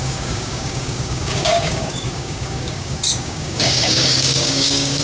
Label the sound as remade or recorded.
remade